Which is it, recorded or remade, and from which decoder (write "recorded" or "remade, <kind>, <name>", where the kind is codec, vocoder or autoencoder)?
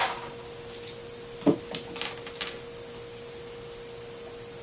recorded